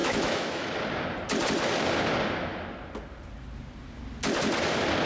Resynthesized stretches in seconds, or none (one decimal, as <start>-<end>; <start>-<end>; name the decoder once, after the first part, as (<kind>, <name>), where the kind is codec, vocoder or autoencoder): 0.0-0.8 (autoencoder, DAC-VAE)